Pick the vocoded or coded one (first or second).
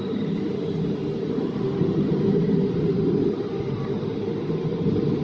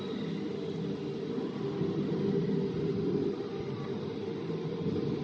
first